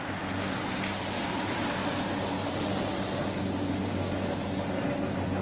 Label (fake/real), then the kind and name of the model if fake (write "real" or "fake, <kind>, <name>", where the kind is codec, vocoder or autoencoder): real